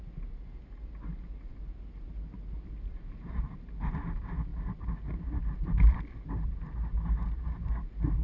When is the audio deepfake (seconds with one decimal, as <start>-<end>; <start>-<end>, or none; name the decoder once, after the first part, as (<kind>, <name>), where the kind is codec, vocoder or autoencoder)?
1.5-3.5 (vocoder, BigVGAN v2); 4.5-7.7